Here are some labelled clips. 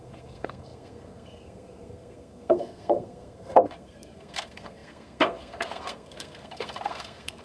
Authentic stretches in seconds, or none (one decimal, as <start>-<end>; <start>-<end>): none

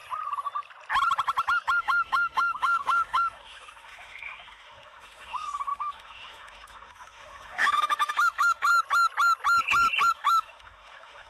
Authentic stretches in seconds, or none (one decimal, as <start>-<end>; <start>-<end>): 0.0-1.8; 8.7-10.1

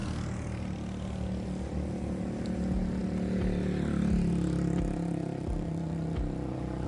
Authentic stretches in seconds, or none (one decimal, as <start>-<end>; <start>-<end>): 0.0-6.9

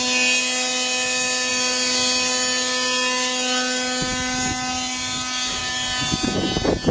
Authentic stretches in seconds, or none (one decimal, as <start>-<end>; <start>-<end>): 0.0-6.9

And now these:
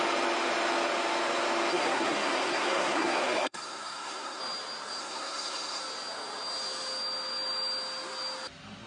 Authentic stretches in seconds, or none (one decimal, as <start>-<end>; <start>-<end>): 0.0-1.7; 4.4-5.0; 5.8-8.9